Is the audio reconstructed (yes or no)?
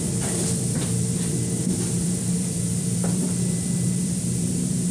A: yes